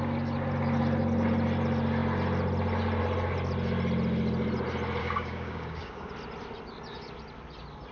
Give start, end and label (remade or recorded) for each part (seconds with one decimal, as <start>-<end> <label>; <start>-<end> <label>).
0.0-5.0 recorded; 5.0-6.1 remade; 6.1-7.9 recorded